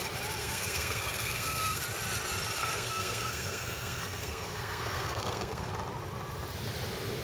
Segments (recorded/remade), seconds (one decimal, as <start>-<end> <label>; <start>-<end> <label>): 0.0-0.4 recorded; 0.4-1.8 remade; 1.8-2.6 recorded; 2.6-5.7 remade; 5.7-7.2 recorded